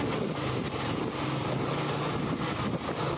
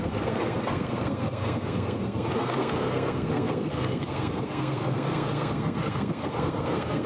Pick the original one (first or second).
first